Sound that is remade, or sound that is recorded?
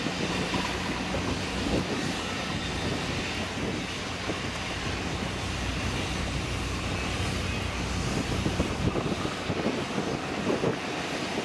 recorded